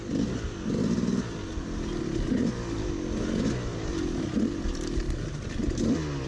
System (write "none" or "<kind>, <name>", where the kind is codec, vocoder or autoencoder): none